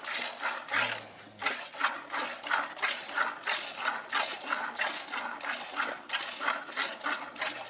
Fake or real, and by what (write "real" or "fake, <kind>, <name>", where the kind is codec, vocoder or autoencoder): real